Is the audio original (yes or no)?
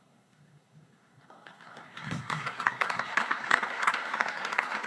no